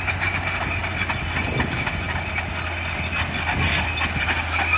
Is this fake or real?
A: real